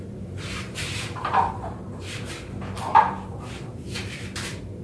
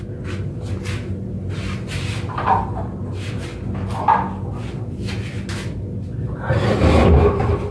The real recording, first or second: second